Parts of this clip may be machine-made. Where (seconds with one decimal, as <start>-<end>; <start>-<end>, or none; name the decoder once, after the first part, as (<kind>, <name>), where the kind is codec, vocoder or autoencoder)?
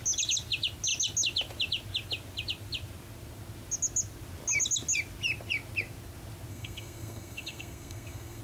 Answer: 6.5-8.4 (codec, SNAC)